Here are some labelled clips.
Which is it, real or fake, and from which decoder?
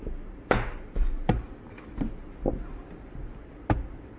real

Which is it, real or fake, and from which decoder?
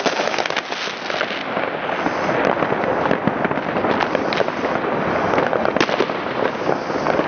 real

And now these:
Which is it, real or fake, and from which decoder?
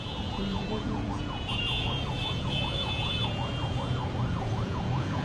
fake, vocoder, Vocos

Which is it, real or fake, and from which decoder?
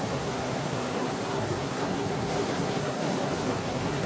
fake, codec, SNAC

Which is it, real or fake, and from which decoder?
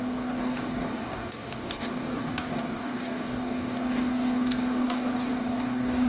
fake, codec, DAC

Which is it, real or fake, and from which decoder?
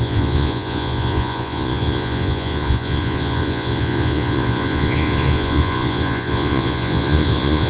fake, vocoder, Vocos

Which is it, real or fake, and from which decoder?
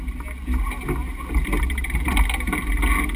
real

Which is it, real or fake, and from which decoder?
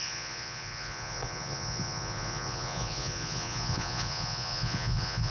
fake, vocoder, Vocos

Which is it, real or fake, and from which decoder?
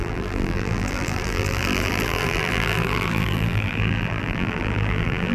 fake, vocoder, BigVGAN v2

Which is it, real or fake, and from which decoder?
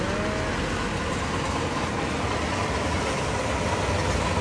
real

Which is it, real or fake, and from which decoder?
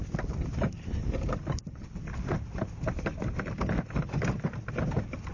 real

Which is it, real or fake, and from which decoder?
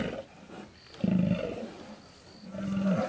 real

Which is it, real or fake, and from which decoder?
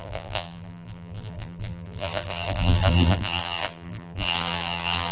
fake, vocoder, BigVGAN v2